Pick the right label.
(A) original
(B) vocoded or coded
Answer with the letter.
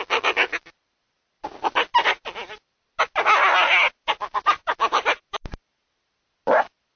A